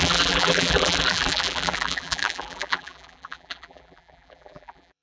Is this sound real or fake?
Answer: fake